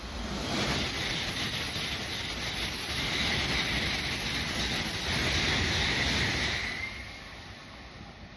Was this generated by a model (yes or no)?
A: no